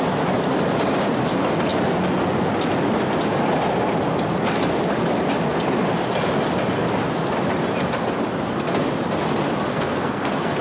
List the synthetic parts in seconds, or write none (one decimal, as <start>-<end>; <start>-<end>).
9.7-10.6

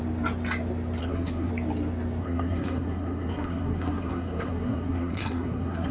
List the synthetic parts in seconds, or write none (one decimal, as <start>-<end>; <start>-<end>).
1.0-1.5; 2.2-5.9

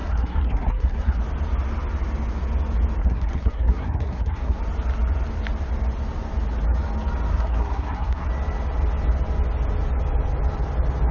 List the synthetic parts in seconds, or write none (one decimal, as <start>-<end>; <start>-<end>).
0.0-1.2; 3.0-4.6; 7.3-8.3

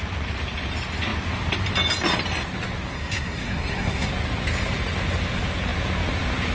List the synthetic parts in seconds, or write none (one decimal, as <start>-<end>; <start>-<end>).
2.9-4.1

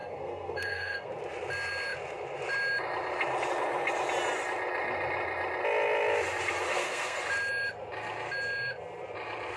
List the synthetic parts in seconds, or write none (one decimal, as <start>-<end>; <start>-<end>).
0.0-1.1; 6.7-7.2

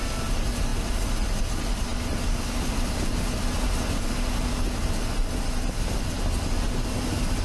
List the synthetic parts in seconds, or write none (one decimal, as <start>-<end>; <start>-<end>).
none